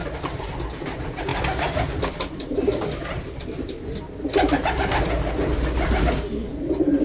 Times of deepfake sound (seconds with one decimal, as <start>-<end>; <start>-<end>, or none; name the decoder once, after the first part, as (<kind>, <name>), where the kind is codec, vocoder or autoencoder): none